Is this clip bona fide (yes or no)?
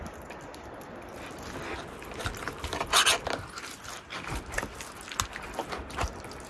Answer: yes